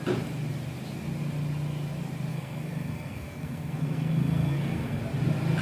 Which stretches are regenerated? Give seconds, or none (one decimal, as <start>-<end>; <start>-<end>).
2.3-5.0